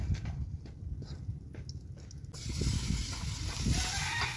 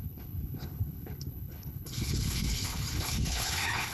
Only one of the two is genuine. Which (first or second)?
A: first